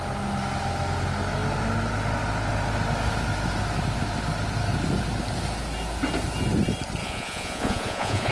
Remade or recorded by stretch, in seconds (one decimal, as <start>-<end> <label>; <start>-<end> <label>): 0.0-7.0 recorded; 7.0-8.3 remade